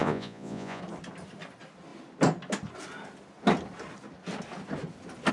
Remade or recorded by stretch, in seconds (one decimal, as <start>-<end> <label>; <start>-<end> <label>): 0.0-0.8 remade; 0.8-5.3 recorded